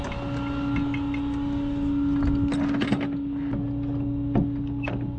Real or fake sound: real